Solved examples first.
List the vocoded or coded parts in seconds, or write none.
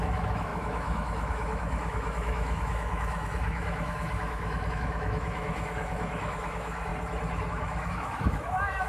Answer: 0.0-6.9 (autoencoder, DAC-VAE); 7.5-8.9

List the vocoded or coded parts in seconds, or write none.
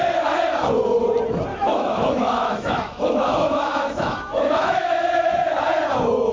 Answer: 1.5-5.3 (autoencoder, DAC-VAE)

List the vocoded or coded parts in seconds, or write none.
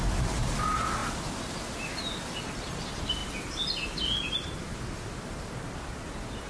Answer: none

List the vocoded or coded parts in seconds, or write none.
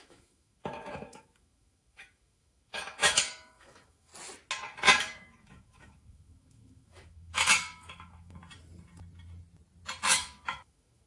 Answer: 0.0-4.1 (autoencoder, DAC-VAE); 5.0-8.4; 10.1-11.1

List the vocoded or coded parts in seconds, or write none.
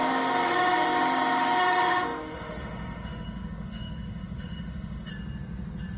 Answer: 0.0-5.1 (autoencoder, DAC-VAE)